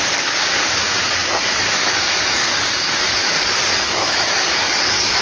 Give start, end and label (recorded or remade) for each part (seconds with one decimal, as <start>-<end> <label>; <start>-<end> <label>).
0.0-5.2 remade